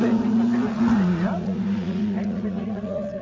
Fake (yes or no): yes